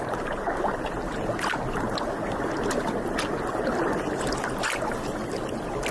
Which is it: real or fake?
real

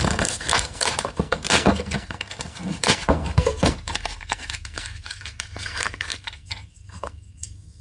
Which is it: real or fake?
fake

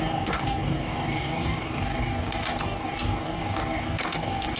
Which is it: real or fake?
fake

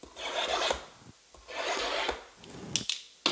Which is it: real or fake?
real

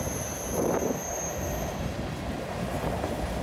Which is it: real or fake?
real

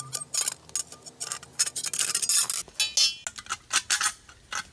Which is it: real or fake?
real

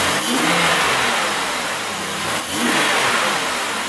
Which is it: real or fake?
real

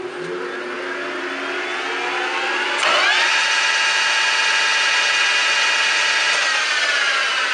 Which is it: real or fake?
real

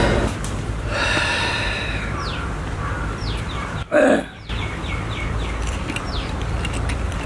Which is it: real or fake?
fake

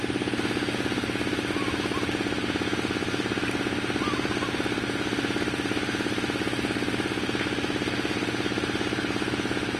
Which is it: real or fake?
real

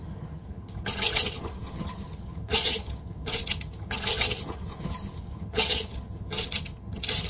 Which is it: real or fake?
fake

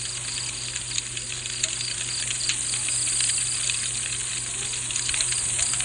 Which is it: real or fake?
real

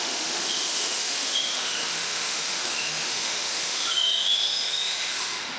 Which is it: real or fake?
fake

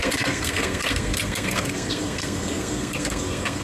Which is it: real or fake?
fake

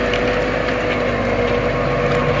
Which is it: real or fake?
real